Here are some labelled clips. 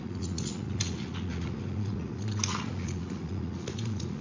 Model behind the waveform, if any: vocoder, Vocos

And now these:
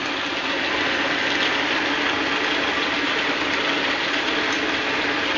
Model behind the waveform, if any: none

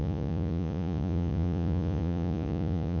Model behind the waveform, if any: vocoder, Vocos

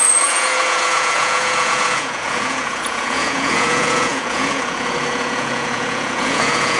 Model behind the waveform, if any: vocoder, Vocos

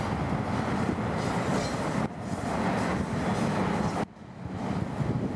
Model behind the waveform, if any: none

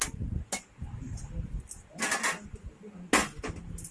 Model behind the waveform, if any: none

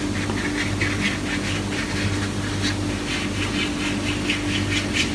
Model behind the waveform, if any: none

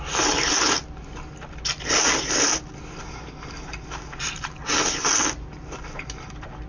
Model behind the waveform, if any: none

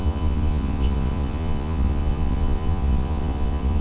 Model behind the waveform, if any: vocoder, Vocos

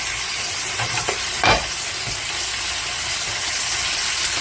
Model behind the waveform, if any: none